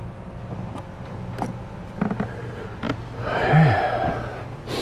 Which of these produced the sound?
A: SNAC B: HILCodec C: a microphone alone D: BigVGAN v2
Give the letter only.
C